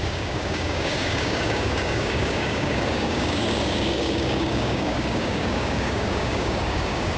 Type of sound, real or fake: fake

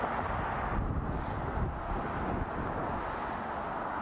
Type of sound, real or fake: real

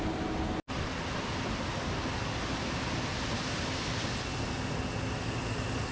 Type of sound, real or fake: real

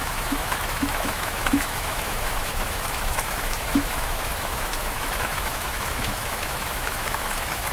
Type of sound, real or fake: fake